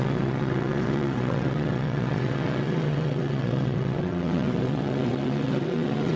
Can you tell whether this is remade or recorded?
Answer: remade